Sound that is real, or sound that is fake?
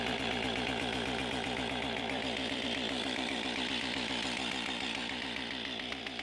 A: fake